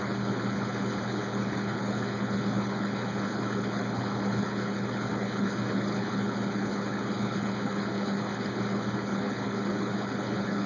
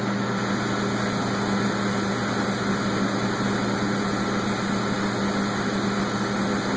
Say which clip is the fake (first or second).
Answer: first